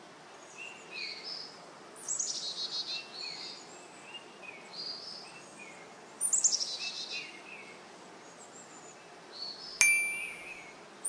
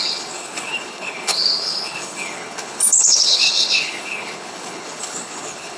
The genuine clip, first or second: first